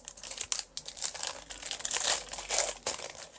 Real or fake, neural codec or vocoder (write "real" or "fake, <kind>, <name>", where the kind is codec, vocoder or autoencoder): real